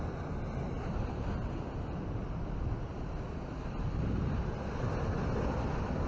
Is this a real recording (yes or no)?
yes